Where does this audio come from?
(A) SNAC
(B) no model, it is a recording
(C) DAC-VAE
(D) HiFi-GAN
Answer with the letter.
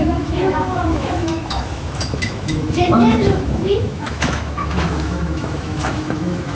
C